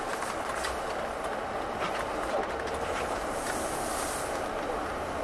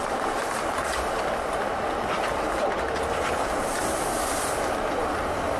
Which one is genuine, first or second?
first